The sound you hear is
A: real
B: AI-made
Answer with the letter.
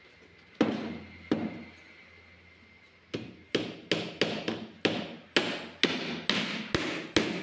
A